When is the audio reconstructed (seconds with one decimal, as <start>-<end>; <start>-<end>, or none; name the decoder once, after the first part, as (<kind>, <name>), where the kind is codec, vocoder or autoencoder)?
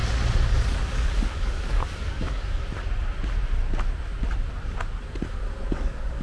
0.8-2.6 (codec, DAC); 5.7-6.2